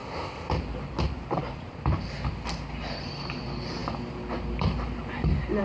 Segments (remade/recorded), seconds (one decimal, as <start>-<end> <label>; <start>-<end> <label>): 0.0-0.5 remade; 0.5-5.6 recorded